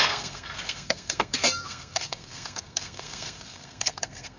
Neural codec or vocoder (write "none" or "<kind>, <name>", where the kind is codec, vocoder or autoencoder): codec, SNAC